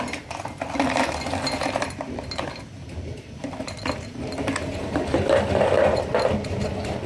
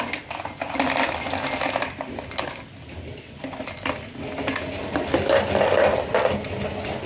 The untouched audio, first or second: second